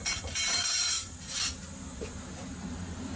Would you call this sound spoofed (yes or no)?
yes